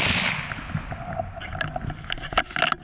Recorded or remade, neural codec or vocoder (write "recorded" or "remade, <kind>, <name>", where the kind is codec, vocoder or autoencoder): recorded